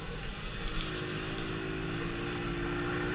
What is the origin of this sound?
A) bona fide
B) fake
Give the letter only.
A